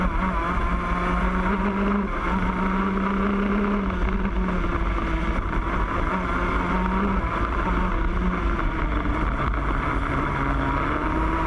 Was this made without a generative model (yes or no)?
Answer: yes